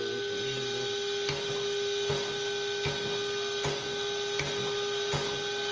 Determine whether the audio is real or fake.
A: real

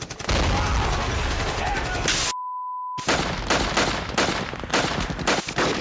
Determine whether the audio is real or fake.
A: real